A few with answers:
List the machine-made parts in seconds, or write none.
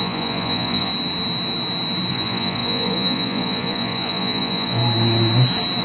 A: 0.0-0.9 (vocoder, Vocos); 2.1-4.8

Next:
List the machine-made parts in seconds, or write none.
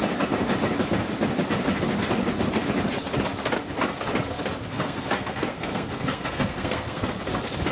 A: 4.7-7.2 (codec, SNAC)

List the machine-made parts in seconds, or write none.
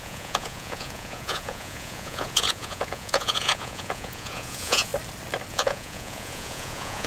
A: 0.0-4.9 (vocoder, Vocos); 5.5-7.1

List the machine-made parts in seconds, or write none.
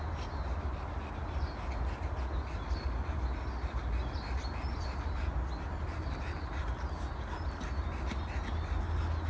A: none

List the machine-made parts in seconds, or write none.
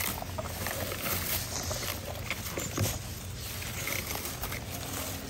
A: 1.9-3.5 (vocoder, BigVGAN v2)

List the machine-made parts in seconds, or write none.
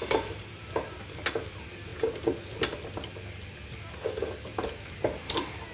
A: none